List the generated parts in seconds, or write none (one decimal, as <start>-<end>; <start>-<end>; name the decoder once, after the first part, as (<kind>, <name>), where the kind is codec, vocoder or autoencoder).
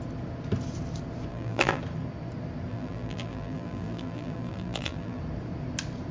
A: 1.3-1.8 (vocoder, BigVGAN v2); 2.7-5.2